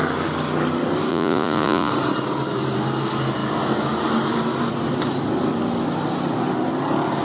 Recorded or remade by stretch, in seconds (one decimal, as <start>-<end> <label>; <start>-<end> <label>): 0.0-1.1 recorded; 1.1-1.9 remade; 1.9-7.2 recorded